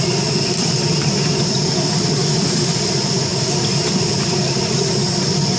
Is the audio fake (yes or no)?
no